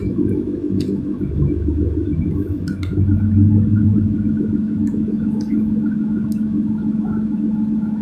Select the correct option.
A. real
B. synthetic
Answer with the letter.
B